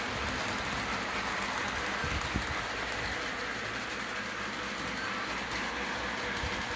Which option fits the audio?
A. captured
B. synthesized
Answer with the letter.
A